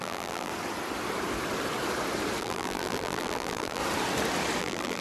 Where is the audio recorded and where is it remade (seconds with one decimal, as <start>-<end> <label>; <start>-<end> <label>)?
0.0-0.5 remade; 0.5-2.4 recorded; 2.4-3.8 remade; 3.8-4.6 recorded; 4.6-5.0 remade